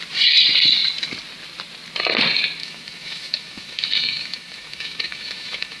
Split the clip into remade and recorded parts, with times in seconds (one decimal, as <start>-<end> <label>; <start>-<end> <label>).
0.0-2.6 recorded; 2.6-5.8 remade

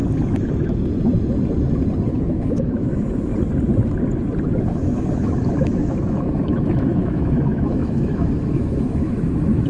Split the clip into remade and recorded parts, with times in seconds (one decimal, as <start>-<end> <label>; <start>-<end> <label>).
0.0-2.1 recorded; 2.1-3.3 remade; 3.3-4.6 recorded; 4.6-9.7 remade

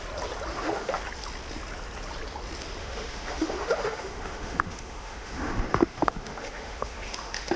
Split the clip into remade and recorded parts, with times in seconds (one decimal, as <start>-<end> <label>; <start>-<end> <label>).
0.0-0.5 recorded; 0.5-1.0 remade; 1.0-2.8 recorded; 2.8-7.6 remade

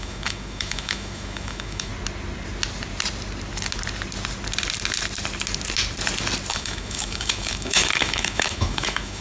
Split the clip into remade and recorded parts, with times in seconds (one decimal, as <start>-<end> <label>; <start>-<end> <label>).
0.0-1.9 remade; 1.9-6.5 recorded; 6.5-9.2 remade

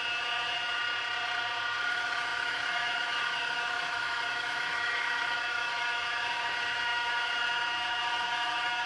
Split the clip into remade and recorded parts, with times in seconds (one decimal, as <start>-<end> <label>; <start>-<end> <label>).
0.0-0.8 remade; 0.8-1.9 recorded; 1.9-8.9 remade

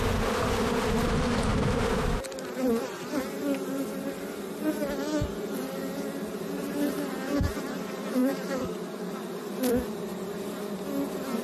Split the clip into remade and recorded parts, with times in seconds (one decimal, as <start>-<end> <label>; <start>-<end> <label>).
0.0-11.4 recorded

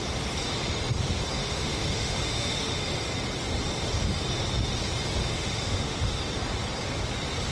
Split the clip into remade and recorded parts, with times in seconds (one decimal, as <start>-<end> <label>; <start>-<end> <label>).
0.0-1.4 recorded; 1.4-2.8 remade; 2.8-5.2 recorded; 5.2-6.2 remade; 6.2-7.5 recorded